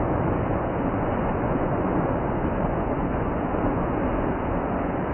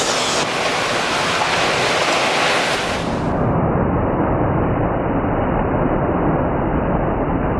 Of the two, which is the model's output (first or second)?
first